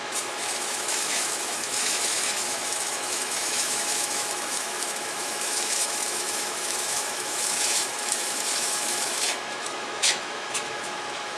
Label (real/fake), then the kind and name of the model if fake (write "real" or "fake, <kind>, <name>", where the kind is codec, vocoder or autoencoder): fake, autoencoder, DAC-VAE